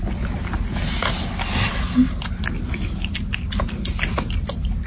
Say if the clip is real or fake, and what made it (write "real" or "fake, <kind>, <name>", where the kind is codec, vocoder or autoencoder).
real